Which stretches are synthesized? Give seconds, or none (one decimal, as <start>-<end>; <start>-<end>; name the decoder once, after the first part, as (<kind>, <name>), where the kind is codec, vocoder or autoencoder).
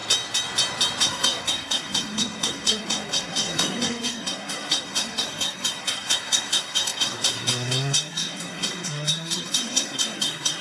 1.0-10.6 (codec, SNAC)